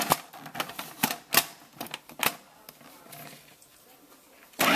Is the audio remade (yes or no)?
no